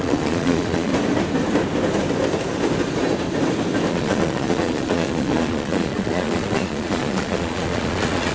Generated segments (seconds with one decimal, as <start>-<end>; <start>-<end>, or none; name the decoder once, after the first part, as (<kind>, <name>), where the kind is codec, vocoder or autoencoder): 0.0-0.9 (vocoder, Vocos); 3.9-8.3